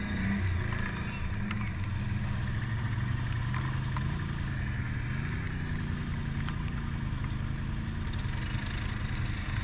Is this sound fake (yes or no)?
no